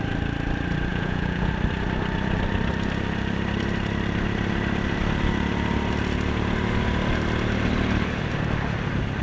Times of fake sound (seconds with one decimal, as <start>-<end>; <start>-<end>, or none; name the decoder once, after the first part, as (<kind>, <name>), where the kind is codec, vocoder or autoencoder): 0.9-1.5 (vocoder, Vocos)